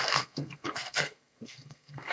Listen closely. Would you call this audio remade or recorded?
remade